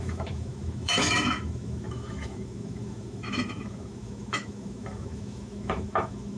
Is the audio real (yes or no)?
no